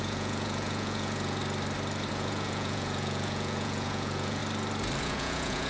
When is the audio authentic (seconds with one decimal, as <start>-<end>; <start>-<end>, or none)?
1.4-2.1; 4.4-5.0